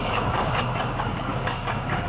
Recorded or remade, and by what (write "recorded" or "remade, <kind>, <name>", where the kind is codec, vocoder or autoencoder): remade, codec, DAC